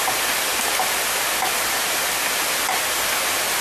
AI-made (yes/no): no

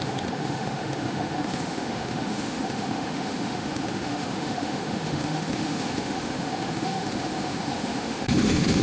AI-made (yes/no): yes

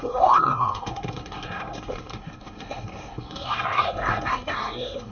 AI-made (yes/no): yes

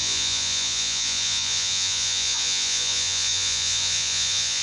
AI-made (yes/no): yes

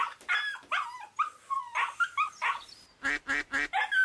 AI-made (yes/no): no